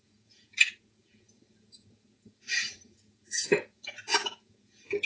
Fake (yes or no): yes